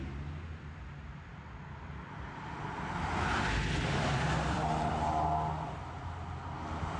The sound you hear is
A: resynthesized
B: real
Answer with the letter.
B